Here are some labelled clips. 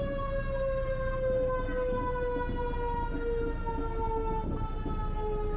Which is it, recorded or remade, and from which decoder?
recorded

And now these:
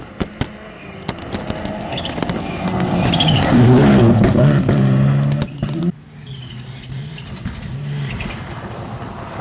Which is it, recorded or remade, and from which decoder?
recorded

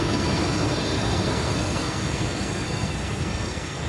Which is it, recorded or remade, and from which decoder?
remade, codec, SNAC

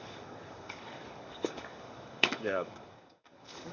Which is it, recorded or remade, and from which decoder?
remade, codec, DAC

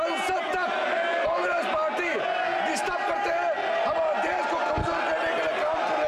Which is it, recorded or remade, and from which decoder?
recorded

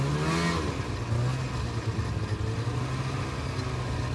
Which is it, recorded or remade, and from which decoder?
recorded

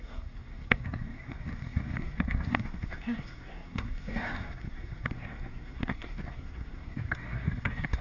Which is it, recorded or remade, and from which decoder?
remade, codec, SNAC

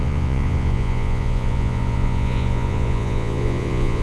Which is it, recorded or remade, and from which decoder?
remade, vocoder, Vocos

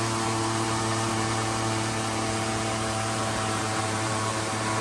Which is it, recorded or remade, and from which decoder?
remade, vocoder, BigVGAN v2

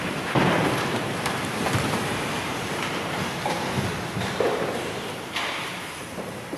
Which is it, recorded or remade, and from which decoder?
remade, vocoder, BigVGAN v2